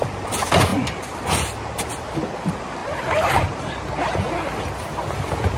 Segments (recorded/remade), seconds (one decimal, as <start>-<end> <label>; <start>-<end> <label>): 0.0-2.8 recorded; 2.8-3.7 remade; 3.7-5.6 recorded

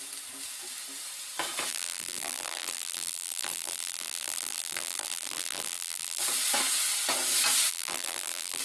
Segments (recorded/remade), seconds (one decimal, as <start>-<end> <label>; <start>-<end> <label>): 0.0-1.7 recorded; 1.7-6.2 remade; 6.2-7.7 recorded; 7.7-8.6 remade